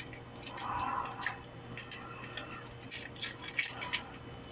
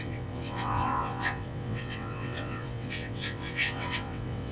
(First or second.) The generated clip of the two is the second